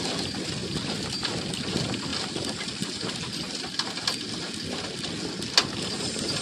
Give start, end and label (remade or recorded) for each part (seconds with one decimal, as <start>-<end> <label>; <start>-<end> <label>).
0.0-0.6 recorded; 0.6-1.1 remade; 1.1-6.4 recorded